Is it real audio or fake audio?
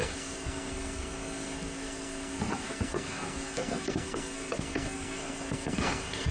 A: fake